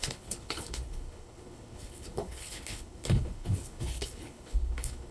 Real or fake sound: fake